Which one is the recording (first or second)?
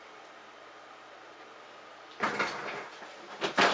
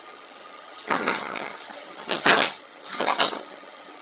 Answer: first